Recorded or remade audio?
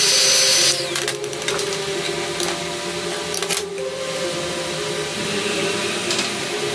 recorded